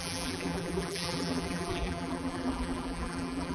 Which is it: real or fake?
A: fake